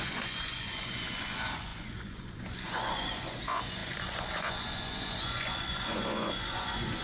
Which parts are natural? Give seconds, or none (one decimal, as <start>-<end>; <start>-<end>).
none